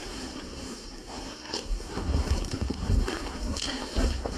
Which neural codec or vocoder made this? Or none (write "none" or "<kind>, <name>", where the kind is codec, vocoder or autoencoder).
codec, SNAC